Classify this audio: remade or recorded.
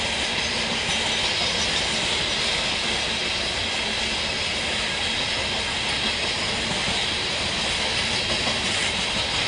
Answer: recorded